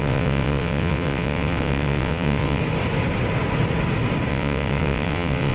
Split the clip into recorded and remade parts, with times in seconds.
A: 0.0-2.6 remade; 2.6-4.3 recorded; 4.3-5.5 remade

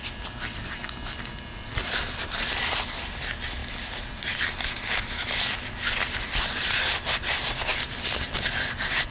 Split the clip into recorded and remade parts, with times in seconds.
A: 0.0-1.3 recorded; 1.3-3.1 remade; 3.1-3.6 recorded; 3.6-6.8 remade; 6.8-7.7 recorded; 7.7-9.1 remade

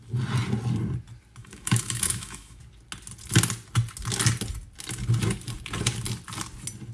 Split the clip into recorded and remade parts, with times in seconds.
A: 0.0-1.4 recorded; 1.4-2.6 remade; 2.6-6.9 recorded

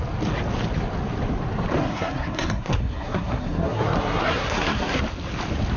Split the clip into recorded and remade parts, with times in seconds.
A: 0.0-1.8 recorded; 1.8-5.0 remade; 5.0-5.8 recorded

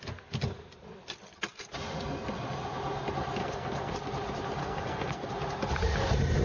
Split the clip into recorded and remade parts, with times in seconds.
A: 0.0-3.4 recorded; 3.4-3.9 remade; 3.9-4.6 recorded; 4.6-5.3 remade; 5.3-6.4 recorded

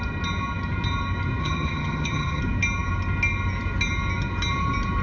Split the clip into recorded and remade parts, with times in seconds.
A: 0.0-1.4 recorded; 1.4-2.4 remade; 2.4-5.0 recorded

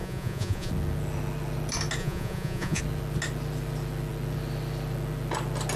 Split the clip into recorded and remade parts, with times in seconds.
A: 0.0-0.7 remade; 0.7-2.0 recorded; 2.0-2.8 remade; 2.8-5.8 recorded